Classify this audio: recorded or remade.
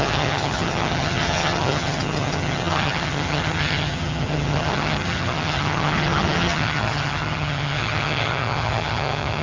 remade